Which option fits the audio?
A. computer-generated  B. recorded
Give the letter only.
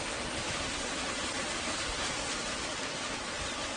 B